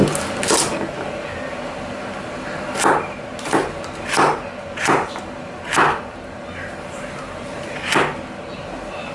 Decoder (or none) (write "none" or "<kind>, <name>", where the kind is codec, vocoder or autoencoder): none